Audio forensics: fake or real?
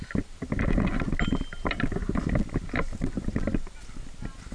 real